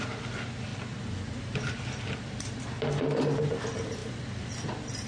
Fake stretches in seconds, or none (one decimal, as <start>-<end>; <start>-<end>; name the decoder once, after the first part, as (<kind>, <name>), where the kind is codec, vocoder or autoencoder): 0.7-1.7 (vocoder, BigVGAN v2); 4.0-4.5